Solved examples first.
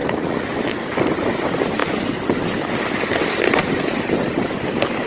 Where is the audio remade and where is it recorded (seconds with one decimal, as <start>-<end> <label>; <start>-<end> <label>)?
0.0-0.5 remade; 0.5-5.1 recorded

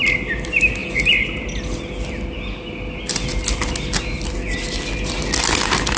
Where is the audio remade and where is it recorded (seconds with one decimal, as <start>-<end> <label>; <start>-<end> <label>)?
0.0-6.0 recorded

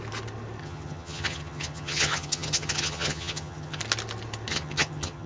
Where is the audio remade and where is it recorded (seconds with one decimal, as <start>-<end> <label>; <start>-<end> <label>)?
0.0-0.6 recorded; 0.6-3.8 remade; 3.8-4.5 recorded; 4.5-5.3 remade